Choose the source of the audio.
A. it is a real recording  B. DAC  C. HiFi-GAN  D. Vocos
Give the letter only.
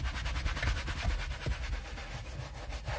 A